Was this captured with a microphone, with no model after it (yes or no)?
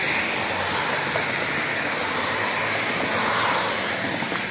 yes